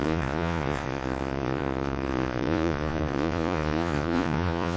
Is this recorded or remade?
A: remade